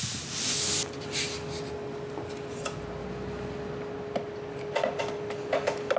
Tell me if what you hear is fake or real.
real